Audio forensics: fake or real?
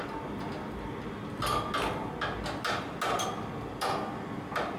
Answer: real